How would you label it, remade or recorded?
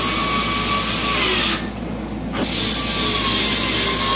recorded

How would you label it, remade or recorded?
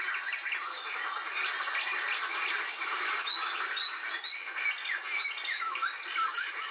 recorded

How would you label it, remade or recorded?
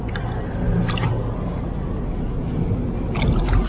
recorded